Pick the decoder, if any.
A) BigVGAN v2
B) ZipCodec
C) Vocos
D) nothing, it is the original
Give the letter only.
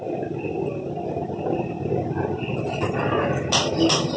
D